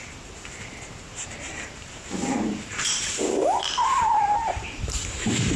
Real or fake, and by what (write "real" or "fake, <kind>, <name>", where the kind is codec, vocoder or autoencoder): fake, vocoder, BigVGAN v2